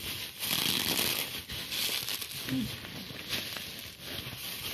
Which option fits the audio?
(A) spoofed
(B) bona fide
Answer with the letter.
B